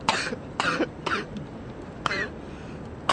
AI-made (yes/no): no